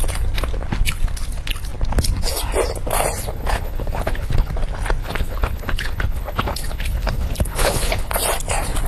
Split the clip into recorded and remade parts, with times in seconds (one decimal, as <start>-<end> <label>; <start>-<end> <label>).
0.0-3.3 recorded; 3.3-4.5 remade; 4.5-5.0 recorded; 5.0-8.1 remade; 8.1-8.9 recorded